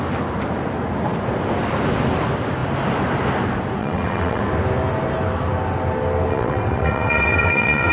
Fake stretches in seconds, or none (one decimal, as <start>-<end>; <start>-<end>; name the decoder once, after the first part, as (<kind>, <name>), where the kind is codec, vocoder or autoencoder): 3.8-4.4 (vocoder, WaveNeXt); 6.3-7.9